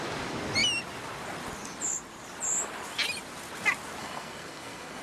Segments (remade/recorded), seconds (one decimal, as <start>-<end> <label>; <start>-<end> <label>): 0.0-4.0 recorded; 4.0-5.0 remade